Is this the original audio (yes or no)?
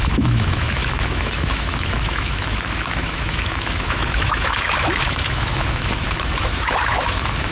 no